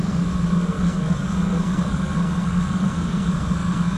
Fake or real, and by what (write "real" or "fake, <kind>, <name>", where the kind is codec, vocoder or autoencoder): fake, codec, SNAC